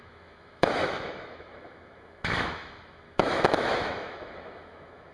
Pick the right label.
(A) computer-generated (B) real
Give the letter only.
A